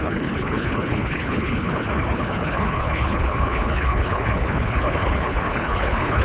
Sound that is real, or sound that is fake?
fake